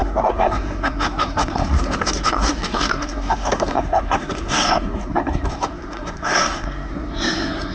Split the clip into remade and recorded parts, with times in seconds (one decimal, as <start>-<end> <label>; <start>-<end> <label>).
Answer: 0.0-7.7 remade